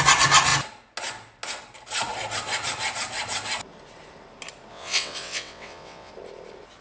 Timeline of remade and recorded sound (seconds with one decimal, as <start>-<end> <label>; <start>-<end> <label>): 0.0-4.7 recorded; 4.7-6.1 remade; 6.1-6.8 recorded